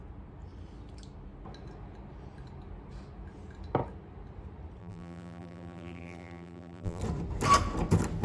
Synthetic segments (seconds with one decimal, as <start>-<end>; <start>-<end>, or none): 4.8-7.0